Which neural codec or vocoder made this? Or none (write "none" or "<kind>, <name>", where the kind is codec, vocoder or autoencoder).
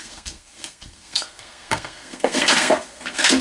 codec, SNAC